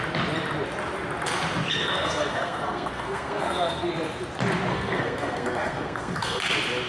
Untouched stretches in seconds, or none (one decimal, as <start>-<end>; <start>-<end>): 0.0-1.7; 3.9-4.7; 6.4-6.9